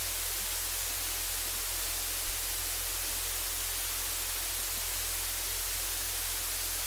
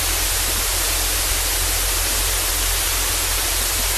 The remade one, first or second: second